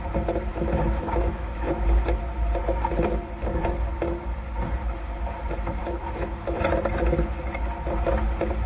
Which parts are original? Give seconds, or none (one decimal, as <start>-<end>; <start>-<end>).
0.0-0.5; 1.7-5.8; 6.6-8.7